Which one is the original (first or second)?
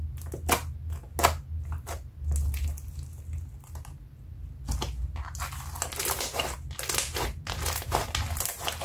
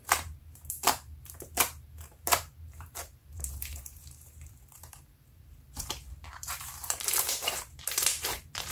first